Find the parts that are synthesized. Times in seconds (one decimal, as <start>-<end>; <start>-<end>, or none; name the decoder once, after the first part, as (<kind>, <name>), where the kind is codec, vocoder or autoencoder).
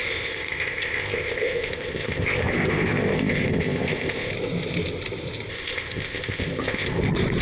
0.0-4.3 (codec, ZipCodec); 5.5-7.0